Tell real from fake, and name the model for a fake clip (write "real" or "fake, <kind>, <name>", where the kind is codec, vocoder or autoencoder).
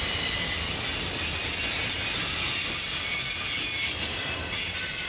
real